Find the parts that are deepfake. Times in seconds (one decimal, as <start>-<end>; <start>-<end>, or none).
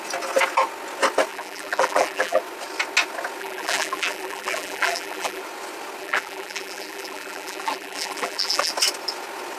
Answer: 1.3-2.4; 3.4-5.4; 6.0-8.7